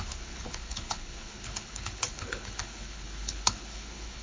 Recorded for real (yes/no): no